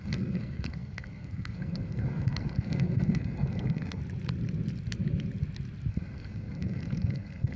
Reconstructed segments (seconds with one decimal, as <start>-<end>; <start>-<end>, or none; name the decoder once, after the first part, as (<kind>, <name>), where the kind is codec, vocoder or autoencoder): 0.0-4.0 (codec, SNAC); 5.9-7.6